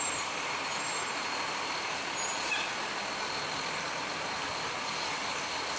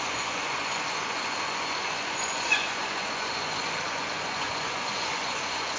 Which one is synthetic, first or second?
second